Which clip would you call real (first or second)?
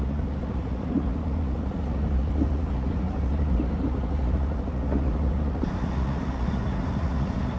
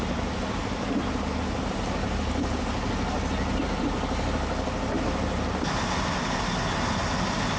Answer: second